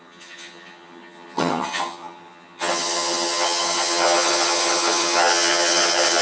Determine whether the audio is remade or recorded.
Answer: remade